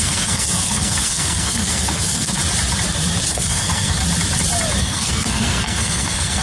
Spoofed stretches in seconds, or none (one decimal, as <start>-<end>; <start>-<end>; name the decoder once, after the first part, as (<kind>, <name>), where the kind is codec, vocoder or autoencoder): 0.0-2.4 (codec, SNAC); 3.3-4.0; 4.8-6.4

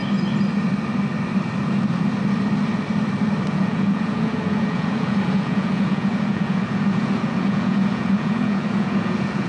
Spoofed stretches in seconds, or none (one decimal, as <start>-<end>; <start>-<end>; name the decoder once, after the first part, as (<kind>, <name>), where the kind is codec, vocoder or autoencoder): 3.5-9.5 (vocoder, Vocos)

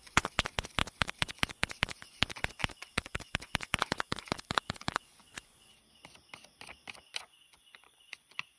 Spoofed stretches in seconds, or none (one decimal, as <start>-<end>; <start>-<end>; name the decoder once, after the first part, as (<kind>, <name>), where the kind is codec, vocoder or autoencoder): 0.0-5.7 (vocoder, Vocos); 7.2-8.6

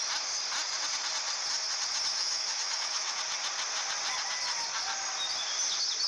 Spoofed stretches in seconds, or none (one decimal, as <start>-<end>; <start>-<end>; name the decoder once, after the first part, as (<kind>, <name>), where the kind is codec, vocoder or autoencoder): 2.1-3.2 (autoencoder, DAC-VAE)

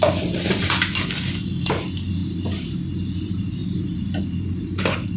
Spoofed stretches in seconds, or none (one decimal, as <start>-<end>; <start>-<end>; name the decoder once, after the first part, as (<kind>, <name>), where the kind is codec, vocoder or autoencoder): none

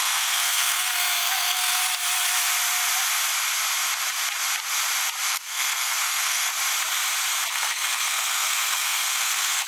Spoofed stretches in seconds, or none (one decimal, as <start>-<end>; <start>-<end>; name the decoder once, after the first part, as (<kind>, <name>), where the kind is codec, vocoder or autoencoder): 0.0-1.8 (codec, SNAC); 5.3-6.5; 7.5-9.7

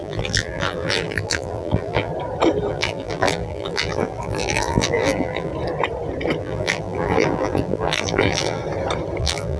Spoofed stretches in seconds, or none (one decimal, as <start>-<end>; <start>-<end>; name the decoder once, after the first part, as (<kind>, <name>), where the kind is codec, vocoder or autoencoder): 0.0-2.1 (vocoder, BigVGAN v2); 2.7-5.5; 6.4-8.6; 9.2-9.6

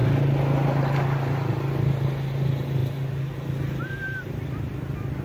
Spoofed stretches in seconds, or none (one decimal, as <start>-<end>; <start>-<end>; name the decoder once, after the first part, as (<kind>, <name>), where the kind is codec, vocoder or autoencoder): none